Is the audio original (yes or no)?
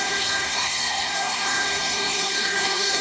no